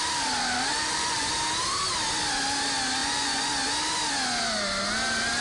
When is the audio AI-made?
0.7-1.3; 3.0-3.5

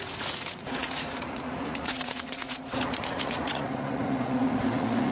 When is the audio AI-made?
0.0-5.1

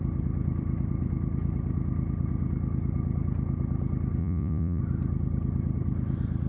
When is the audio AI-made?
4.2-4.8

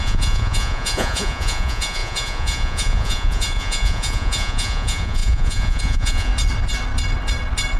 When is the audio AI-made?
0.0-6.3

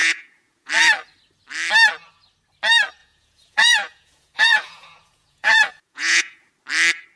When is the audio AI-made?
0.0-0.7; 3.0-6.5

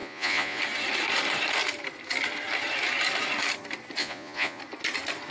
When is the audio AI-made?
0.0-0.6; 4.0-4.6

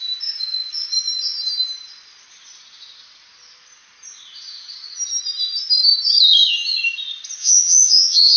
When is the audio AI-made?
7.4-8.4